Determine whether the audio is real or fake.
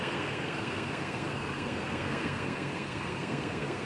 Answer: fake